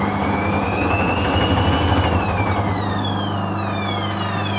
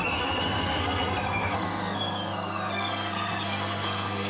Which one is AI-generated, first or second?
second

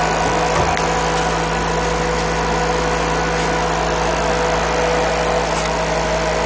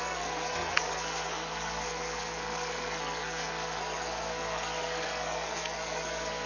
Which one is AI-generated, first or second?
second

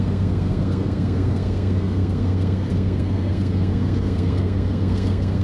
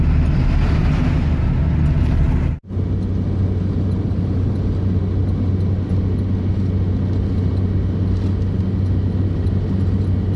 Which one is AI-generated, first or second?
first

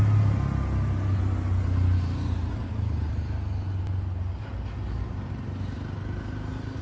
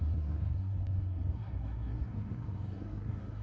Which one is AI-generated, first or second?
second